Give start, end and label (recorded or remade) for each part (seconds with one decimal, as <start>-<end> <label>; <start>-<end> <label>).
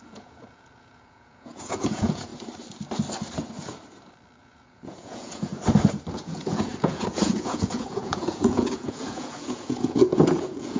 0.0-2.3 remade; 2.3-4.4 recorded; 4.4-5.5 remade; 5.5-6.1 recorded; 6.1-10.8 remade